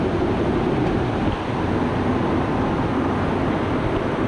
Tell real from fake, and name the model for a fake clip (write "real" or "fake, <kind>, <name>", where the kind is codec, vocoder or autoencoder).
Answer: fake, vocoder, BigVGAN v2